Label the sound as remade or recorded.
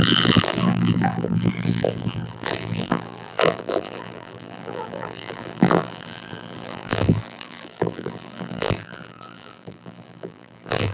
remade